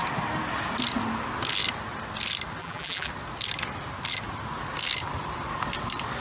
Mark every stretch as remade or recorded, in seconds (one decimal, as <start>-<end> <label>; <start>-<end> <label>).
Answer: 0.0-2.6 recorded; 2.6-3.1 remade; 3.1-6.2 recorded